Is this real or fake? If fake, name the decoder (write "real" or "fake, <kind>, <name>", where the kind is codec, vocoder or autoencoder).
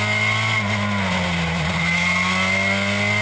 real